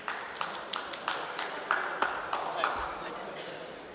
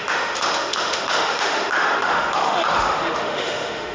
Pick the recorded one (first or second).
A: first